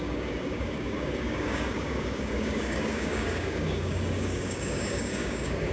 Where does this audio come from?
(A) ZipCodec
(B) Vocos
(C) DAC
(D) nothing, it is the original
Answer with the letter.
C